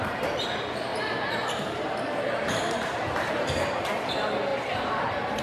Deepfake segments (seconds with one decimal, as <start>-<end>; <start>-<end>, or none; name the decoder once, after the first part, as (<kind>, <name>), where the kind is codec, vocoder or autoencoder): 0.9-3.7 (vocoder, BigVGAN v2); 4.5-5.4